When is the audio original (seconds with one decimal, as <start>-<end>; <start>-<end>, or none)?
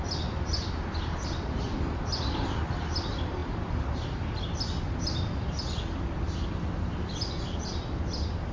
0.0-8.5